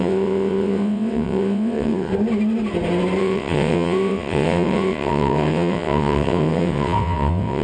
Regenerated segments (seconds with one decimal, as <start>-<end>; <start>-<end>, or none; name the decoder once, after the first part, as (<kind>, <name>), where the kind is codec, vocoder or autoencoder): 0.0-2.1 (vocoder, WaveNeXt); 3.2-7.6